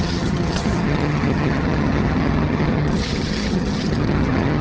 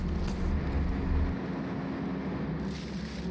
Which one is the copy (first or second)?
first